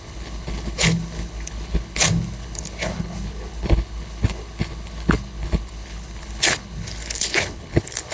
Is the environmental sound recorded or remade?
remade